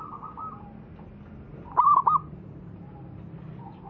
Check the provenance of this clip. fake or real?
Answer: real